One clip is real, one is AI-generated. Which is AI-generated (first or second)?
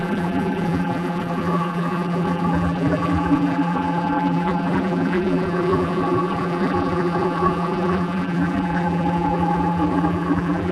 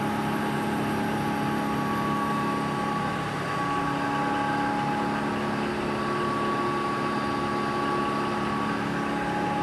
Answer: first